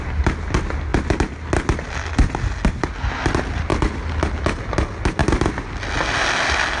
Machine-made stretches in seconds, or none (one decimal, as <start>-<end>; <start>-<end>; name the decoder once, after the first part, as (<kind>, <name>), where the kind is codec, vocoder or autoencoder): none